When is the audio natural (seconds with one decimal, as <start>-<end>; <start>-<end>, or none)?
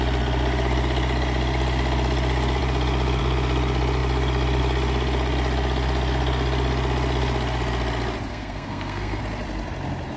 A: 0.0-8.3; 9.2-10.2